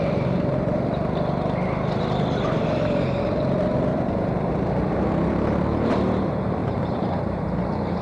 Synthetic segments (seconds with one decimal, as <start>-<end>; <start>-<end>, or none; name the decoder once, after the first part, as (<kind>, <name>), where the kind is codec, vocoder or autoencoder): 3.9-5.0 (vocoder, BigVGAN v2); 6.6-7.5